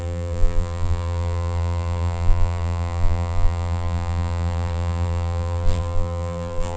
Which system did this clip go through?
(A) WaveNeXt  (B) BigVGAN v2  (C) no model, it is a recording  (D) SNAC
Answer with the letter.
B